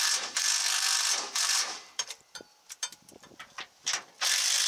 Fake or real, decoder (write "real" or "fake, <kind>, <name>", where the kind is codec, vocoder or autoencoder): fake, vocoder, BigVGAN v2